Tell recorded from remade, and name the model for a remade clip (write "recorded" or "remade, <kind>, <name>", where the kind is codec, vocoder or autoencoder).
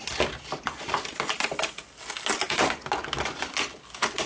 recorded